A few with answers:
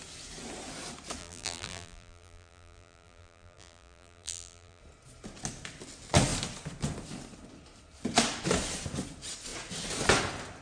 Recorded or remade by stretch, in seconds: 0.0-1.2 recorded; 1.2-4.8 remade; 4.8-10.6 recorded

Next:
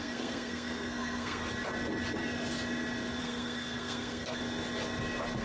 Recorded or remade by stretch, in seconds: 0.0-1.4 remade; 1.4-3.2 recorded; 3.2-4.4 remade; 4.4-5.4 recorded

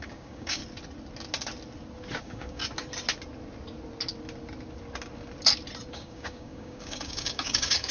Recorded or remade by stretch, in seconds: 0.0-0.6 remade; 0.6-2.2 recorded; 2.2-2.6 remade; 2.6-5.9 recorded; 5.9-7.9 remade

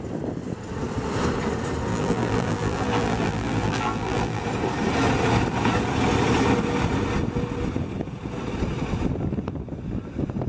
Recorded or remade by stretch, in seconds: 0.0-1.9 recorded; 1.9-4.4 remade; 4.4-10.5 recorded